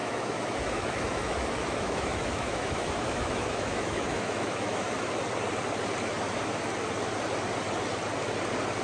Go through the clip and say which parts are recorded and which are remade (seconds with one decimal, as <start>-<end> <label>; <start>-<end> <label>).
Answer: 0.0-5.1 remade; 5.1-8.8 recorded